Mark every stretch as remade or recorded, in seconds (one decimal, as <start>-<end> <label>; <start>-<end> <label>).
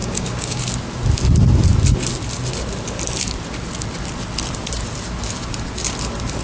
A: 0.0-0.6 remade; 0.6-6.4 recorded